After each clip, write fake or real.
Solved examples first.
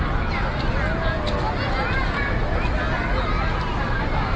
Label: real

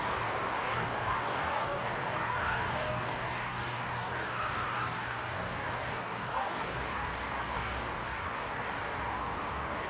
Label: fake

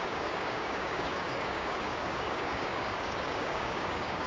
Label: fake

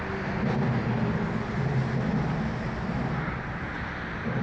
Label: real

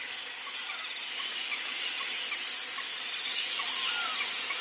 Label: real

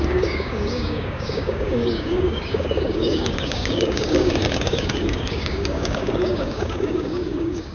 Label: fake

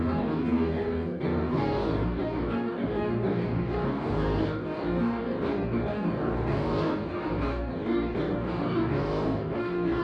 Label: fake